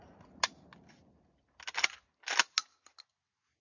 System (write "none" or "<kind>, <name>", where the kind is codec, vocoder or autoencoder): none